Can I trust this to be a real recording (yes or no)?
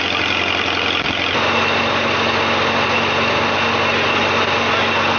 yes